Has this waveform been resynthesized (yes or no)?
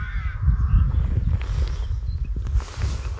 no